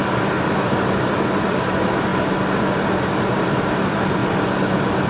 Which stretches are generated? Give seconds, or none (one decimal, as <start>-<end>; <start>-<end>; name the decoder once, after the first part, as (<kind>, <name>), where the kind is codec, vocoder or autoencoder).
0.0-2.1 (vocoder, BigVGAN v2); 3.3-4.2